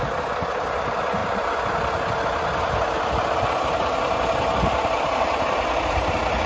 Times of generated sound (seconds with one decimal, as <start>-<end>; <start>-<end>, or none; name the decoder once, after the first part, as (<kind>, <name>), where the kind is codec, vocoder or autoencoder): none